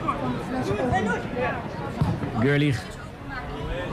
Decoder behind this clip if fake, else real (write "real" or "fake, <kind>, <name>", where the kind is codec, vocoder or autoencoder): real